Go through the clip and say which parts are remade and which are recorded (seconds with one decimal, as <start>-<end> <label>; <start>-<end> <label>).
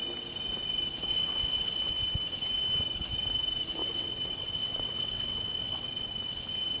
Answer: 0.0-1.1 recorded; 1.1-1.9 remade; 1.9-3.8 recorded; 3.8-5.8 remade; 5.8-6.8 recorded